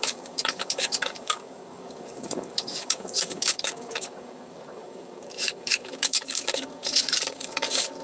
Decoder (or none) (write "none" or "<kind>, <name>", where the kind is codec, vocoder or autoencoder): codec, DAC